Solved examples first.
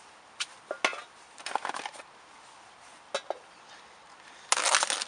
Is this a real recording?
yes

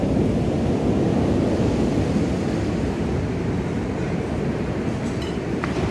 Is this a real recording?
yes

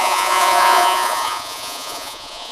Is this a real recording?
no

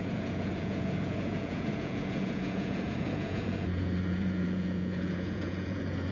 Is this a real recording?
no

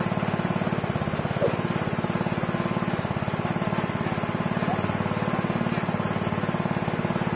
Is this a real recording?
yes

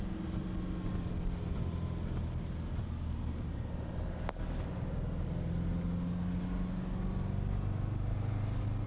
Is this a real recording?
yes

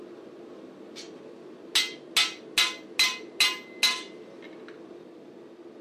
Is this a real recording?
yes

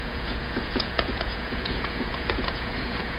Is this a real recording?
no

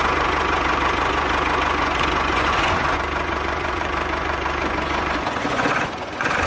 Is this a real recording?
no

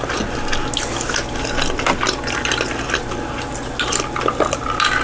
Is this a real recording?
yes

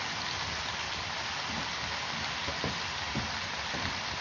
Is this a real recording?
yes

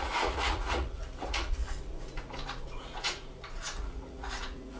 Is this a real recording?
no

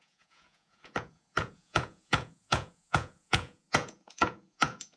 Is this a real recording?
no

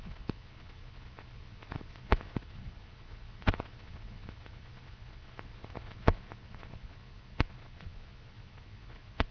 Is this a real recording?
no